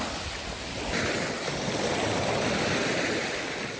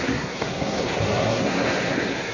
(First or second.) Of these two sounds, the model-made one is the second